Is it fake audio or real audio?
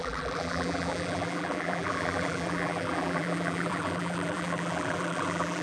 fake